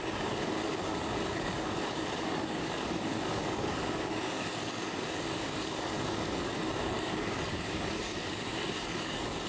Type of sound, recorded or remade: remade